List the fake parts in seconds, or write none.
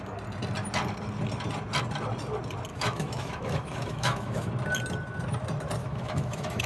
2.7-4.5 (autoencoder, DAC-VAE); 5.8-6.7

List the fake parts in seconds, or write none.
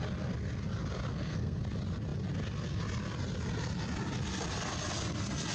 1.1-1.6 (codec, SNAC)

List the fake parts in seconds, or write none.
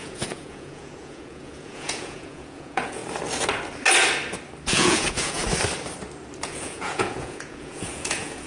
0.0-3.0 (vocoder, Vocos); 4.7-5.4; 6.4-8.5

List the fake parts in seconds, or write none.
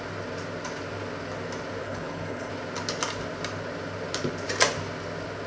1.8-2.5 (codec, HILCodec)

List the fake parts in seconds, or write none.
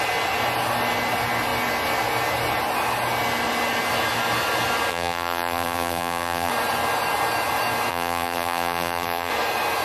4.9-6.5 (vocoder, BigVGAN v2); 7.9-9.3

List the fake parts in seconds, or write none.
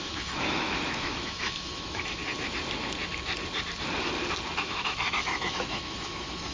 0.0-2.2 (autoencoder, DAC-VAE); 4.6-6.5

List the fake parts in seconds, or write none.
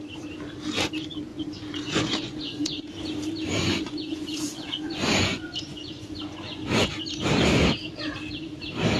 1.3-2.9 (vocoder, Vocos); 3.6-6.9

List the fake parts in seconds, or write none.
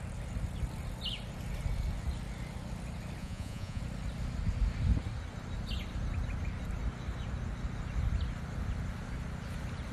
3.2-3.8 (vocoder, Vocos)